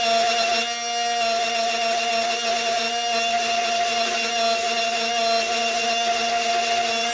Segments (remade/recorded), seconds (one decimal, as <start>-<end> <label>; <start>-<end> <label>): 0.0-7.1 recorded